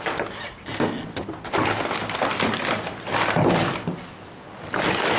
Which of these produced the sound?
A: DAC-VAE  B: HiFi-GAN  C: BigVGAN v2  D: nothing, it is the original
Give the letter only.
D